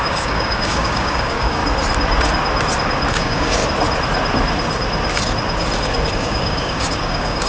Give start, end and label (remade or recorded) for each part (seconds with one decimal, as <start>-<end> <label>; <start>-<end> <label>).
0.0-1.6 remade; 1.6-3.1 recorded; 3.1-3.6 remade; 3.6-6.1 recorded; 6.1-7.5 remade